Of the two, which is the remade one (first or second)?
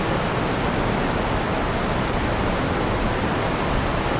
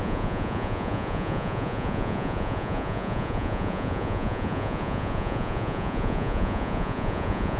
second